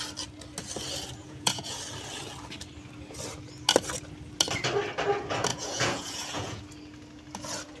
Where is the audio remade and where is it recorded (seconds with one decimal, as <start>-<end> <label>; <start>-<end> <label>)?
0.0-1.2 recorded; 1.2-1.8 remade; 1.8-5.5 recorded; 5.5-6.6 remade; 6.6-7.8 recorded